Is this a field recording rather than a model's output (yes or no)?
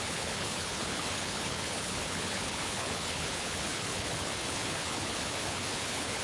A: no